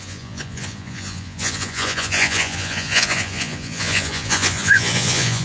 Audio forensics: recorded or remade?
remade